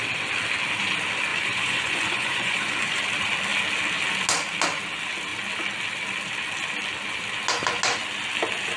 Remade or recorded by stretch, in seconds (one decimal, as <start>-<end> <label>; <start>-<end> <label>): 0.0-1.3 recorded; 1.3-3.0 remade; 3.0-8.8 recorded